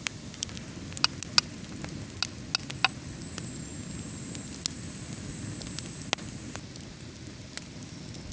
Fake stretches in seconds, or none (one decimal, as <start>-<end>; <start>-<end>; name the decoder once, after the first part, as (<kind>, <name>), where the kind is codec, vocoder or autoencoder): none

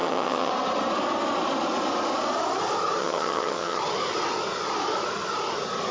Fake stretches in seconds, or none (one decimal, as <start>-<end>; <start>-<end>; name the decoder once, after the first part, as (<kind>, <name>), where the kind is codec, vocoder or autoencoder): 0.0-0.5 (vocoder, HiFi-GAN); 3.0-3.8

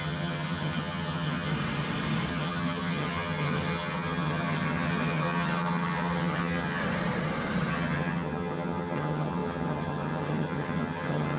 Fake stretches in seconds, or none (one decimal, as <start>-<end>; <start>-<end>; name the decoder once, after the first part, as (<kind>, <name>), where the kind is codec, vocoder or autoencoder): 0.0-1.5 (vocoder, HiFi-GAN); 2.3-6.8; 7.7-11.4

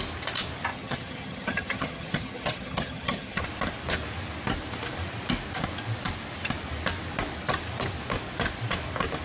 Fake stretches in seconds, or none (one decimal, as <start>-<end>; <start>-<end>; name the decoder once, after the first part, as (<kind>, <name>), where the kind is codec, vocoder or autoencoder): 0.7-3.4 (vocoder, HiFi-GAN)

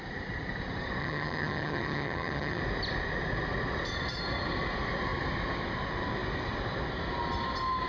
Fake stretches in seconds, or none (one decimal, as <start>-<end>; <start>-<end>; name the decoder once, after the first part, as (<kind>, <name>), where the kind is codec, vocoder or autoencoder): 1.0-2.6 (vocoder, HiFi-GAN)

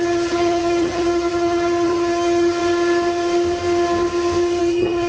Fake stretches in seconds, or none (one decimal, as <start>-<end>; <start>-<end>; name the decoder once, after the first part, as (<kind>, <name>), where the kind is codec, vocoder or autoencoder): 0.0-2.6 (vocoder, HiFi-GAN); 4.6-5.1

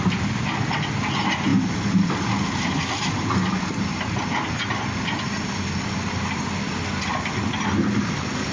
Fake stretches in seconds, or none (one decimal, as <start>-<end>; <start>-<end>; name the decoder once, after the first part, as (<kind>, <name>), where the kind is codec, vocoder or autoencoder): none